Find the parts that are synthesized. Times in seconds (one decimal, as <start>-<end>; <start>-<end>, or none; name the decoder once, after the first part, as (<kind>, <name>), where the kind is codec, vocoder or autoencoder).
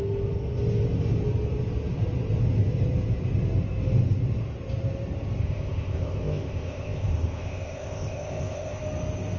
5.4-8.8 (codec, ZipCodec)